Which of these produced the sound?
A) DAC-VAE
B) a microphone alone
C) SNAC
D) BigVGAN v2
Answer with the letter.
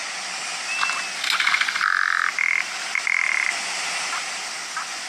B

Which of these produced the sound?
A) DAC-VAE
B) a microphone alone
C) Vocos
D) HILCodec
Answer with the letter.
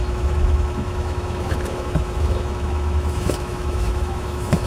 A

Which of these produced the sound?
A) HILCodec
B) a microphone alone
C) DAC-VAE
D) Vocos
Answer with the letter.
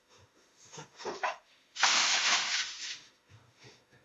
C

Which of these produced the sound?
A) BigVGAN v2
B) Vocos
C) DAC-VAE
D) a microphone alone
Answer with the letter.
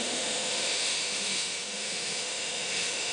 C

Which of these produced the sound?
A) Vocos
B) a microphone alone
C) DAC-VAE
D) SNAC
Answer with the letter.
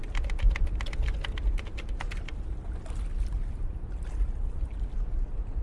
B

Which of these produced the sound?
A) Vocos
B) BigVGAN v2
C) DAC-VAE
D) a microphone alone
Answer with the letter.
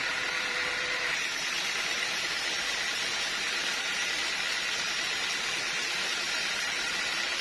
D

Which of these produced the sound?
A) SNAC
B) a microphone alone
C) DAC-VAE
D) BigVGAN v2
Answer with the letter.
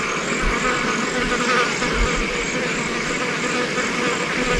B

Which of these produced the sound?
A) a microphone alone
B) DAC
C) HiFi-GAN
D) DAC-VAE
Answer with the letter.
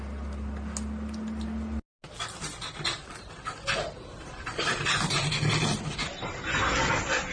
A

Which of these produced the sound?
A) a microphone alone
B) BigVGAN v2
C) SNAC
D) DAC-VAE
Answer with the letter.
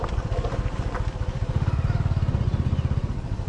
A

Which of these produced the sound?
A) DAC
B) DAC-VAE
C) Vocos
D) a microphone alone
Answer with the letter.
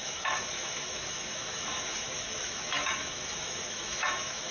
B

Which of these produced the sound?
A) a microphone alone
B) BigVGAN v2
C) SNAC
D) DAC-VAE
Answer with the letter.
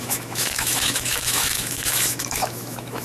D